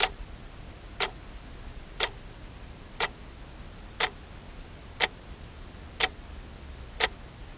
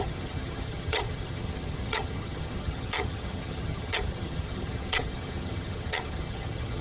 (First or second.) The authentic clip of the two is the first